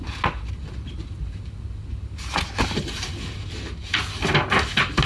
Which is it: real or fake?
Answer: real